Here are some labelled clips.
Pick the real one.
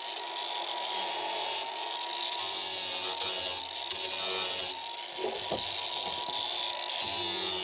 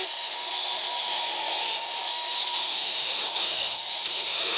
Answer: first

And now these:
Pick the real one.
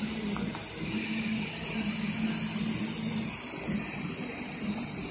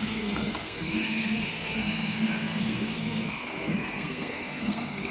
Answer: first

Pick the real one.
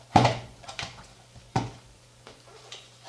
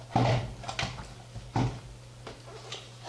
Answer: second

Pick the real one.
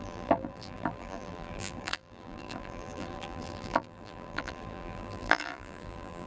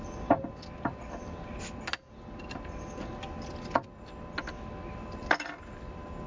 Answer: second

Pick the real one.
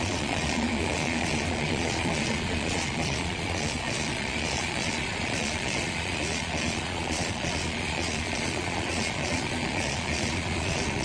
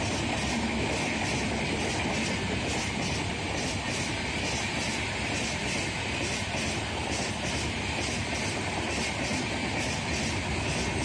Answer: second